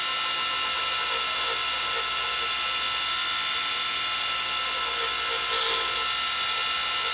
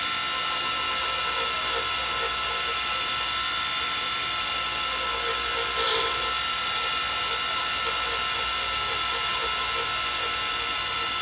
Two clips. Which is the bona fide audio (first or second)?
first